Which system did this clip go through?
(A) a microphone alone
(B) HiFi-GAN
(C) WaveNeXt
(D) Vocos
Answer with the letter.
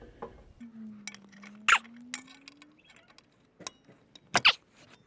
A